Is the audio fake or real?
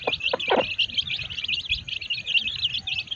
real